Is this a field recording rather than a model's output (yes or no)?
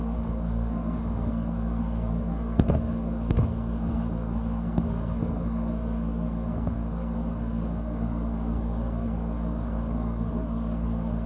no